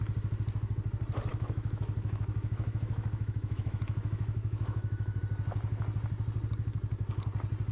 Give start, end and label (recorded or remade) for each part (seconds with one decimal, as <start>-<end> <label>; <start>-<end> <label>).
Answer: 0.0-1.3 recorded; 1.3-5.2 remade; 5.2-7.7 recorded